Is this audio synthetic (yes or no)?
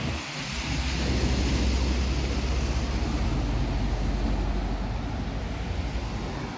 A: no